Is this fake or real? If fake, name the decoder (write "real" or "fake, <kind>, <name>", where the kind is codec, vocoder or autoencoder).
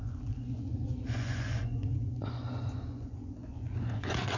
fake, vocoder, Vocos